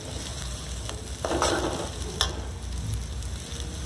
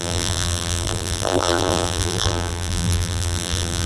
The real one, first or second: first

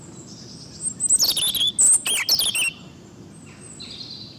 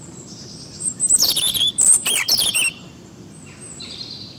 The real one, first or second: first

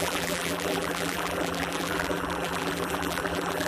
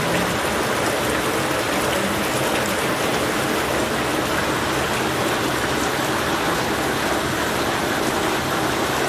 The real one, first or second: second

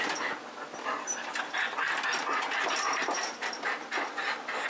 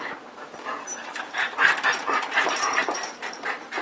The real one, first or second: first